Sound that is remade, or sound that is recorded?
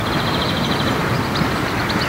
recorded